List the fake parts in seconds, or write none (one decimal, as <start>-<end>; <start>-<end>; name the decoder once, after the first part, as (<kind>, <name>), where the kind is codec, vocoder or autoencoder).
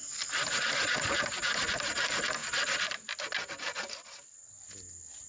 none